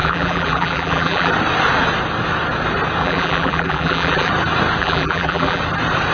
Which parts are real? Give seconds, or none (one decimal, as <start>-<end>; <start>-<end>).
1.3-3.0; 4.3-4.8; 5.6-6.1